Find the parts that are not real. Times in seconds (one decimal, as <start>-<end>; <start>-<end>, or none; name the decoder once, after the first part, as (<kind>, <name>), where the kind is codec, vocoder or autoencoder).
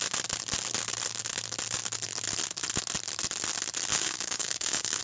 3.9-5.0 (codec, DAC)